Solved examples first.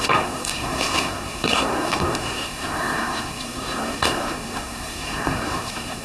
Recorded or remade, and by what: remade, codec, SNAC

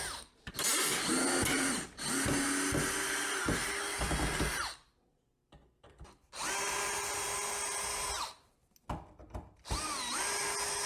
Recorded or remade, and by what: recorded